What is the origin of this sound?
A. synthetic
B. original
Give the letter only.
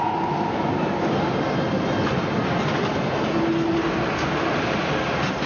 B